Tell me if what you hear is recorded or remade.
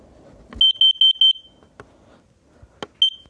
recorded